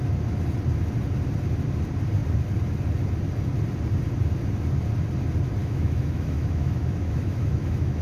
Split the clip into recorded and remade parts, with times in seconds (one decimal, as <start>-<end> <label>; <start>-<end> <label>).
0.0-5.6 recorded; 5.6-8.0 remade